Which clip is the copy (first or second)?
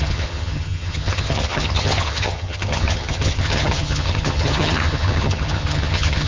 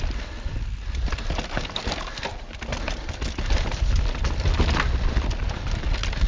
first